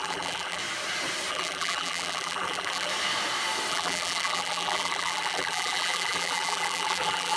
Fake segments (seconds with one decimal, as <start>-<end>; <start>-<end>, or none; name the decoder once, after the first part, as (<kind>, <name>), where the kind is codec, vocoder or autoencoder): 0.0-0.6 (vocoder, BigVGAN v2); 1.3-2.9; 3.7-7.4